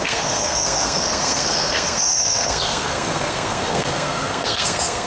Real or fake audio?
fake